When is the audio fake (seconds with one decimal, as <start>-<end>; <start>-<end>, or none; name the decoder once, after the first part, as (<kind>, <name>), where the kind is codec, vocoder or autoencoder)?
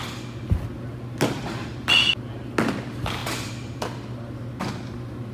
none